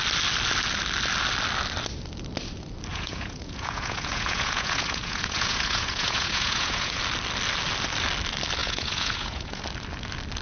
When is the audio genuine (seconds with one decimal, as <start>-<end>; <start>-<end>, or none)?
0.0-2.9; 7.0-8.6; 9.6-10.4